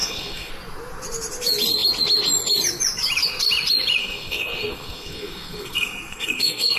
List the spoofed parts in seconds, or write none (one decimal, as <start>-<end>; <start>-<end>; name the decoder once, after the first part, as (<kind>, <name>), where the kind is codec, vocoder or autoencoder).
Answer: 0.0-0.5 (codec, SNAC); 4.0-6.8